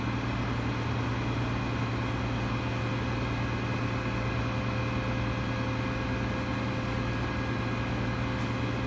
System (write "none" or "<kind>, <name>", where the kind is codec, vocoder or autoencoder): none